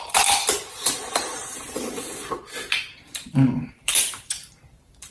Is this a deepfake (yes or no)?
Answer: yes